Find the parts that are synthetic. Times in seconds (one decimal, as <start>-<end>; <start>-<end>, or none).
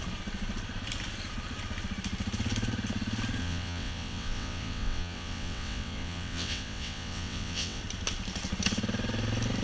3.4-7.8